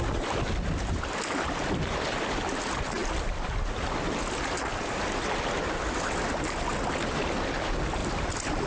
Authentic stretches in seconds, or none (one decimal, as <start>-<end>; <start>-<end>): 0.0-8.0